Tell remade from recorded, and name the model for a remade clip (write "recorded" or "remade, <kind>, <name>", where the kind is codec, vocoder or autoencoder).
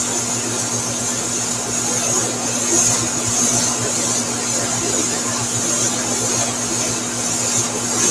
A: recorded